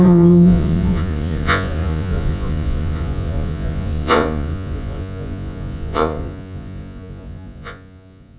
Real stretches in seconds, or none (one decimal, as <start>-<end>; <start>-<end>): none